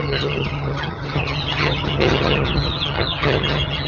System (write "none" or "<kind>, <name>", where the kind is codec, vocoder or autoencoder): vocoder, HiFi-GAN